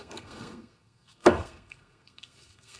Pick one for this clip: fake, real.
fake